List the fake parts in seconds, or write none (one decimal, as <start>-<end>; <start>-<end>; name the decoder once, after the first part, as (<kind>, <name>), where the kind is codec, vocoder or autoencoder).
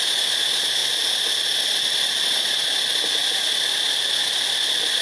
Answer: none